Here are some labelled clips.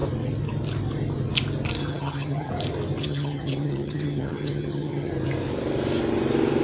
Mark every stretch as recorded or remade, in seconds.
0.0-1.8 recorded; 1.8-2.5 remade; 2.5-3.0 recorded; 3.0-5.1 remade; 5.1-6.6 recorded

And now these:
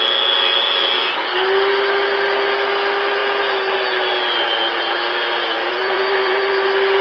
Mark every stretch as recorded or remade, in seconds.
0.0-5.6 recorded; 5.6-6.5 remade; 6.5-7.0 recorded

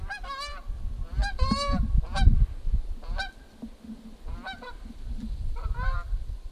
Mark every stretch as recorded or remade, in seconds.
0.0-1.2 remade; 1.2-5.1 recorded; 5.1-6.5 remade

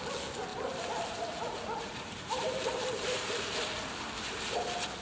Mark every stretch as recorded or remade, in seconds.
0.0-0.5 recorded; 0.5-3.5 remade; 3.5-5.0 recorded

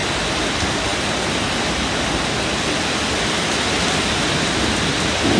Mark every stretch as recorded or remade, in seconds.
0.0-5.4 recorded

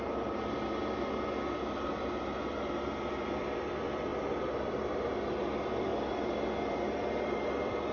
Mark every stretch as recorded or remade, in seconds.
0.0-1.9 recorded; 1.9-4.1 remade; 4.1-4.6 recorded; 4.6-7.9 remade

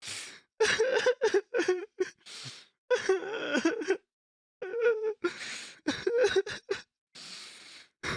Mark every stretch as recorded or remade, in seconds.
0.0-0.9 recorded; 0.9-1.8 remade; 1.8-4.7 recorded; 4.7-5.9 remade; 5.9-8.2 recorded